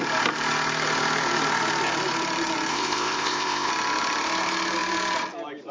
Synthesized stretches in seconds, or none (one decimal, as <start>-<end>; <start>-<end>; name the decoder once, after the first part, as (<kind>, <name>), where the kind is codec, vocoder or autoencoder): 2.7-3.7 (codec, ZipCodec)